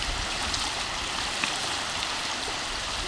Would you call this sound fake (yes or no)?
no